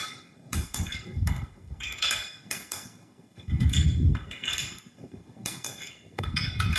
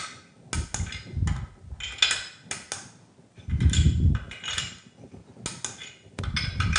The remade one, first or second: first